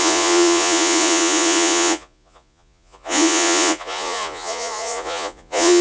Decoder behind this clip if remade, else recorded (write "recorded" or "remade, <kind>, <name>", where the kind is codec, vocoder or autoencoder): remade, vocoder, Vocos